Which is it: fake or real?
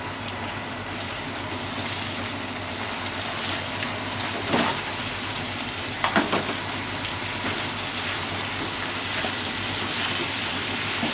real